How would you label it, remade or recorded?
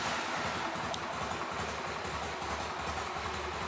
recorded